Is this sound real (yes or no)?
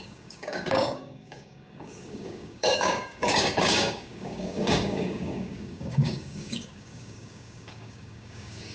no